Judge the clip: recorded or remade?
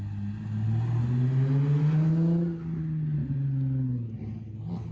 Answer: recorded